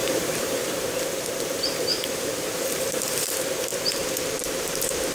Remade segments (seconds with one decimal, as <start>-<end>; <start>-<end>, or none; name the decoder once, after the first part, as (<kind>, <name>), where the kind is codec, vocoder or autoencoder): 0.0-3.7 (vocoder, BigVGAN v2); 4.6-5.1